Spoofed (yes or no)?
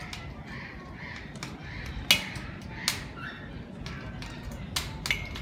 no